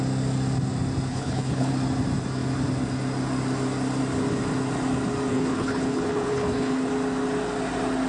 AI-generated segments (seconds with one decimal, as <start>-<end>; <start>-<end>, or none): 1.1-1.7; 5.3-6.9

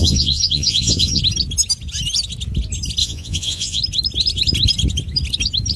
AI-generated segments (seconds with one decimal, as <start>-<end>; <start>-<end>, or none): 0.0-1.2; 3.0-3.8

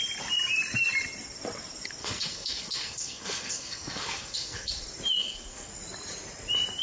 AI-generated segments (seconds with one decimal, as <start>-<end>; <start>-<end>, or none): 2.0-4.7; 5.2-5.7

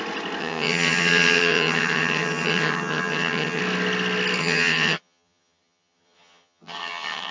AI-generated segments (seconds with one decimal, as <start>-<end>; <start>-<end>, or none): 0.4-3.6; 4.4-7.3

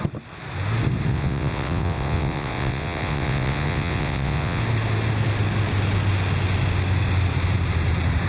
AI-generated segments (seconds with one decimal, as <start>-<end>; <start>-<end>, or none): 1.1-4.6

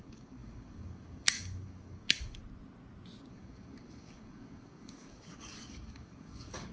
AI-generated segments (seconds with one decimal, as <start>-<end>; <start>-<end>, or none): 0.0-2.4; 3.3-6.7